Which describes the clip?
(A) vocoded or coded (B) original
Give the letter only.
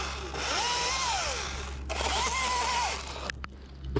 B